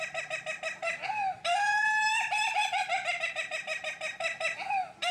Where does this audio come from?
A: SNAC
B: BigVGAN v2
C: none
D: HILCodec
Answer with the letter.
B